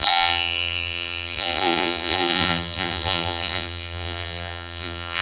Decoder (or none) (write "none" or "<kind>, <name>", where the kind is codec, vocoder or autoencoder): vocoder, BigVGAN v2